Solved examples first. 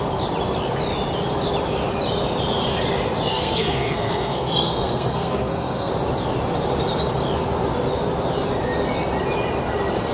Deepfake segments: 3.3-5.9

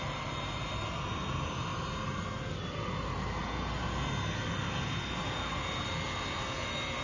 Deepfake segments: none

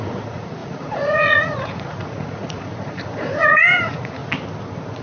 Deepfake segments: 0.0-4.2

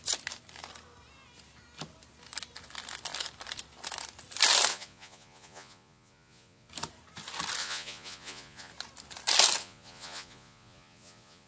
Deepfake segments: 4.7-6.7; 7.6-8.7; 9.6-11.5

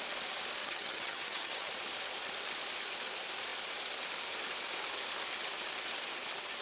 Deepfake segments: 0.6-1.7

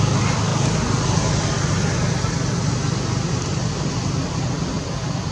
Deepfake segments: none

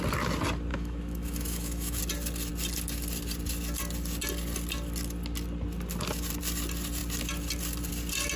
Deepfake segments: 0.7-2.0